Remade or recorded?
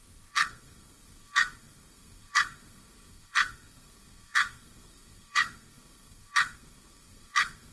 remade